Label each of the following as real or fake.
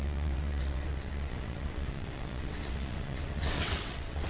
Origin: fake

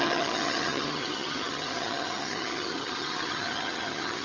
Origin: fake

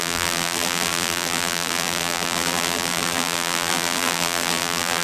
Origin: fake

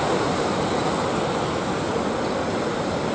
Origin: real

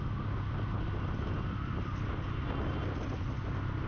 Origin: real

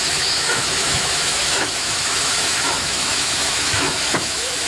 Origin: fake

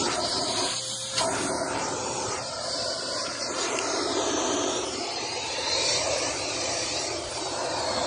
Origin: fake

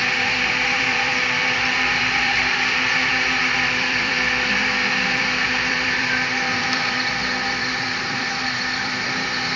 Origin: fake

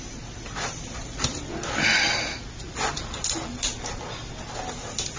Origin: real